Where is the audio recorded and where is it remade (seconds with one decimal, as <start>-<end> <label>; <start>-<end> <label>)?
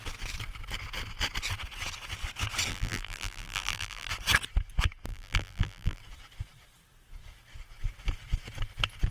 0.0-2.7 recorded; 2.7-4.1 remade; 4.1-5.1 recorded; 5.1-6.0 remade; 6.0-9.1 recorded